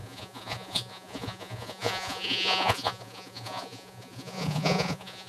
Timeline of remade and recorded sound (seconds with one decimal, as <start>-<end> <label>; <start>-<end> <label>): 0.0-5.3 remade